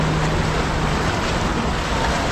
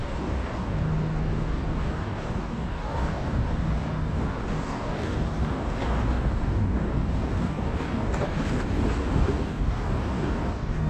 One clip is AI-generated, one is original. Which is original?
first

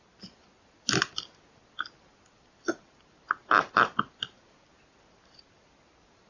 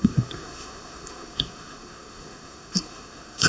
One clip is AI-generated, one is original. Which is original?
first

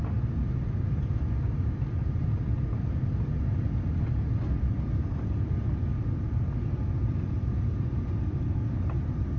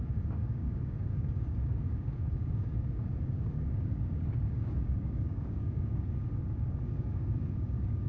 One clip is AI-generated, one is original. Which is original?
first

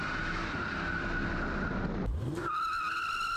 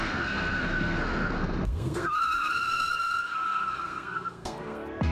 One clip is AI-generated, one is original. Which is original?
first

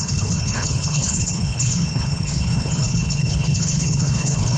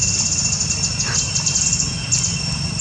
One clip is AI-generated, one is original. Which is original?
second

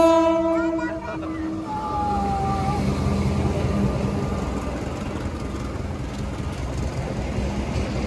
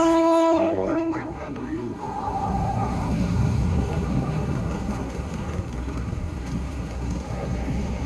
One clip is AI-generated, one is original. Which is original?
first